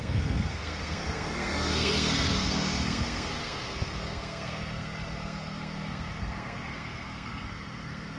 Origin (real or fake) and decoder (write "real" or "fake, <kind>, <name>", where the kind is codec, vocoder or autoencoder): fake, codec, SNAC